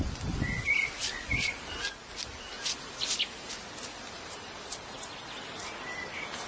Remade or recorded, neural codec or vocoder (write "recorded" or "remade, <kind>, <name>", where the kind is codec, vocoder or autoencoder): recorded